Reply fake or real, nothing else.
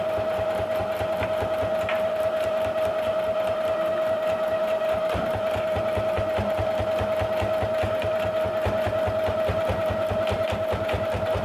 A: real